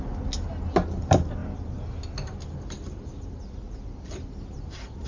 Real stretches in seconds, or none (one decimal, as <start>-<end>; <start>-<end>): 0.0-5.1